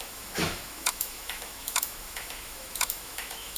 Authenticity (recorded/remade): remade